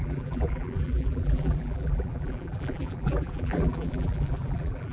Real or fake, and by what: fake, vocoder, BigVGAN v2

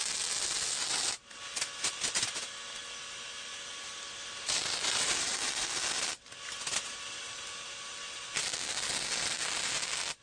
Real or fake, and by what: real